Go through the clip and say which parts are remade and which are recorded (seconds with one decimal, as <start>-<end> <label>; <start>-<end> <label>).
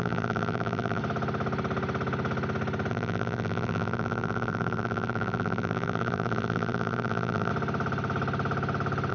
0.0-1.0 remade; 1.0-2.9 recorded; 2.9-7.5 remade; 7.5-9.1 recorded